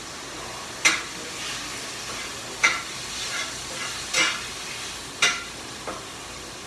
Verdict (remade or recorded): recorded